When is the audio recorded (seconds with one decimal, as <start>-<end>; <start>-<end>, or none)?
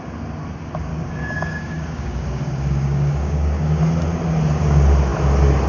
0.0-0.9; 3.8-5.7